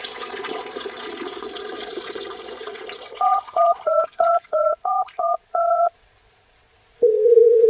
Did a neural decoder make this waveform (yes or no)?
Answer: yes